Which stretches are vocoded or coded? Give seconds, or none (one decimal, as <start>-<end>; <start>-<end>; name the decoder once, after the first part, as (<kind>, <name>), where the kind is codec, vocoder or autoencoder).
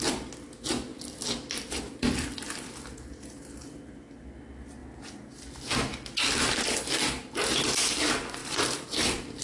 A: 0.9-3.1 (vocoder, BigVGAN v2); 8.4-9.4